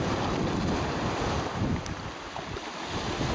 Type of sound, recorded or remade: recorded